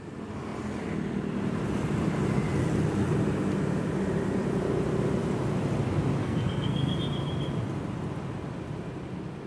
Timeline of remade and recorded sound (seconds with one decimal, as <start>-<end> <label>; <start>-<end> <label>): 0.0-6.2 recorded; 6.2-7.0 remade; 7.0-9.5 recorded